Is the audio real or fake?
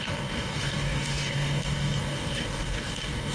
fake